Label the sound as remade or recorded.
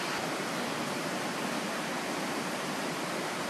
recorded